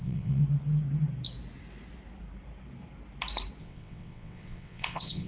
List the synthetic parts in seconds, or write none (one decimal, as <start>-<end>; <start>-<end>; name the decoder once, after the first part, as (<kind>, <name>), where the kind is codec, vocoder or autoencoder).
0.0-0.4 (vocoder, WaveNeXt); 3.6-5.3